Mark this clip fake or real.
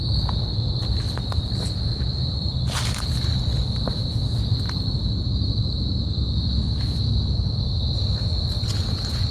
real